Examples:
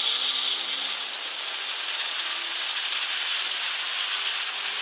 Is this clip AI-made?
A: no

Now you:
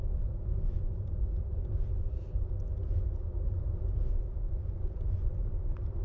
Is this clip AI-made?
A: no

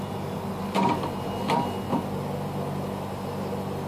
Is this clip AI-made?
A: no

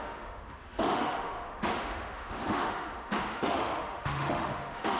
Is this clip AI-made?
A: yes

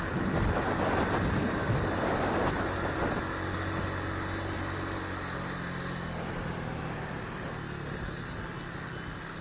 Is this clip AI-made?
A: no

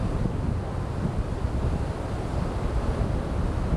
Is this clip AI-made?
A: no